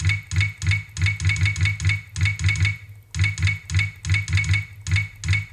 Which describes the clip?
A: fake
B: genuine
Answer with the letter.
B